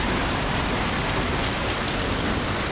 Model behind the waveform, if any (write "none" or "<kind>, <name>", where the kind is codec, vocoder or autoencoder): none